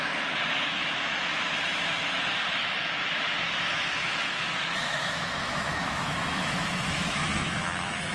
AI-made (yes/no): yes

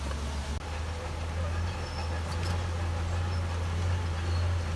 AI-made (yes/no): no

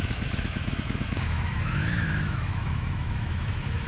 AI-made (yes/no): yes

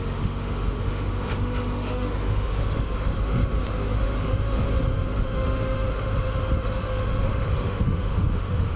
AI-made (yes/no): yes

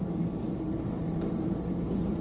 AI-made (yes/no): no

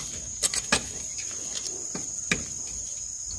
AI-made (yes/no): no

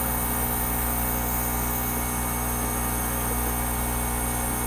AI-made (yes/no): no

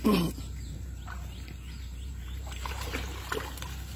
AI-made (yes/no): no